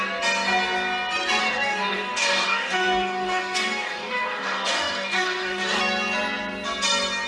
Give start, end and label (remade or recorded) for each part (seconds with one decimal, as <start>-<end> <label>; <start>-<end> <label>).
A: 0.0-1.4 recorded; 1.4-5.8 remade; 5.8-7.3 recorded